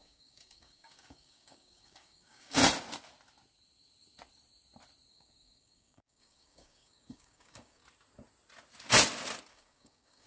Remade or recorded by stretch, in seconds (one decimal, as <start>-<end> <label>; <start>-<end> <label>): 0.0-2.6 remade; 2.6-5.1 recorded; 5.1-7.8 remade; 7.8-9.5 recorded; 9.5-10.3 remade